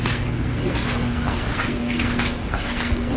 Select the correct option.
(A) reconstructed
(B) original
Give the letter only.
A